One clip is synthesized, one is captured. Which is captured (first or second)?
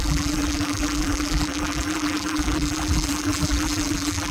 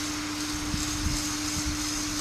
second